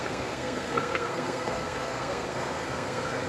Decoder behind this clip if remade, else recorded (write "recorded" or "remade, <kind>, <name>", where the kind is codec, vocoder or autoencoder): remade, codec, SNAC